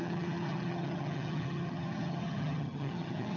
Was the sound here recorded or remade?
remade